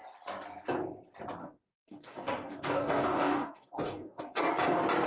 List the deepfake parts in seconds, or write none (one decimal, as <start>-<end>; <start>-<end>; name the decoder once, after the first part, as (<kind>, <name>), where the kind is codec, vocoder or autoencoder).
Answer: 1.4-4.5 (codec, DAC)